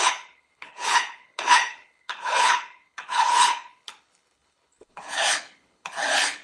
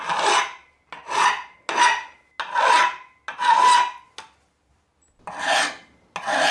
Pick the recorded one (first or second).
second